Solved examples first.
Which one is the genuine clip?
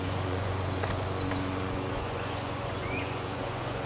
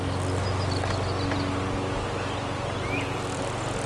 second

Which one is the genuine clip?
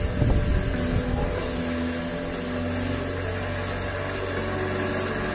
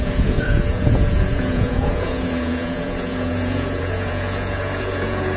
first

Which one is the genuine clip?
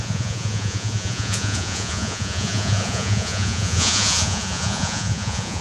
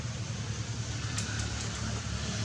second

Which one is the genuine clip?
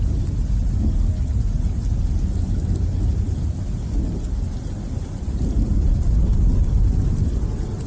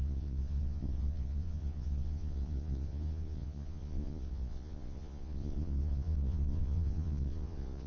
first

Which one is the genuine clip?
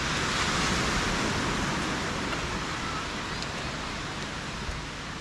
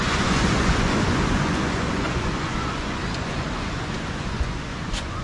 first